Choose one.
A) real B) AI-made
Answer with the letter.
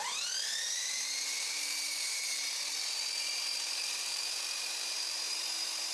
B